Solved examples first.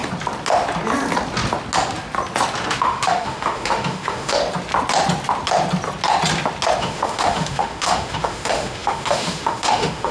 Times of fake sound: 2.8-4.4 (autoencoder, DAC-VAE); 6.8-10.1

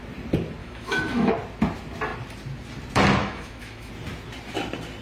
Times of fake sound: 0.6-1.3 (autoencoder, DAC-VAE); 3.2-3.9

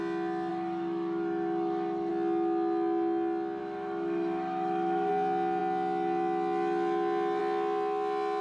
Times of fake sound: 0.5-2.1 (autoencoder, DAC-VAE); 3.6-5.1

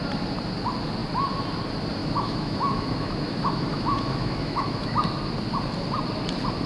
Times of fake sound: 2.0-5.0 (autoencoder, DAC-VAE)

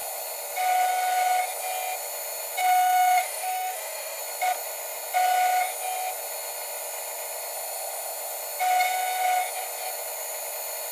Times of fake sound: 2.6-4.2 (autoencoder, DAC-VAE)

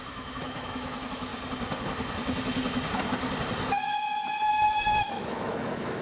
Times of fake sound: 0.0-1.3 (autoencoder, DAC-VAE); 4.5-6.0

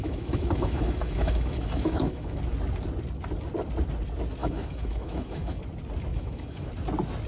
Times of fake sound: 0.0-2.4 (autoencoder, DAC-VAE); 4.4-5.6; 6.1-6.7

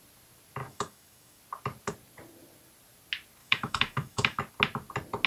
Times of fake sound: 0.6-1.4 (autoencoder, DAC-VAE); 3.4-4.4